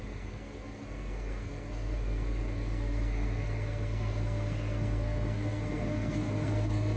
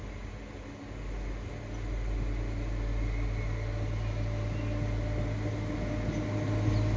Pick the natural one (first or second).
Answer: second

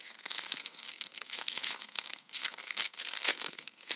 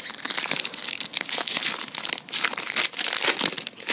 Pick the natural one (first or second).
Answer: second